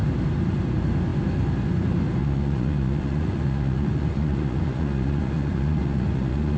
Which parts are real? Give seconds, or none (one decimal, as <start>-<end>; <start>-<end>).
0.0-2.2